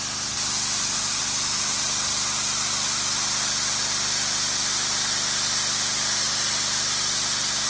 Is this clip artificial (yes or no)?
no